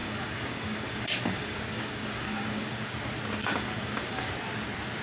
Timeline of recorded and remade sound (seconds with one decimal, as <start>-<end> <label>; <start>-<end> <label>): 0.0-3.0 remade; 3.0-3.4 recorded; 3.4-4.3 remade; 4.3-5.0 recorded